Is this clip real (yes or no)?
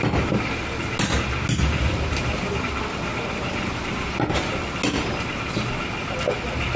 yes